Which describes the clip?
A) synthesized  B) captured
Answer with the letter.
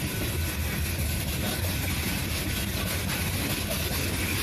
B